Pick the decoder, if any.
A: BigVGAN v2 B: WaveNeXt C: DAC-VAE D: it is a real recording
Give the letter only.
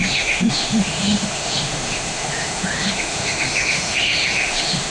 C